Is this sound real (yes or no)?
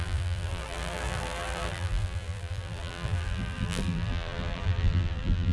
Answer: no